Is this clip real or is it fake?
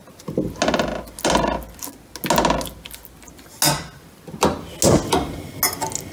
real